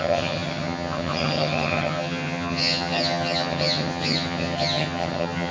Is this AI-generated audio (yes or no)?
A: yes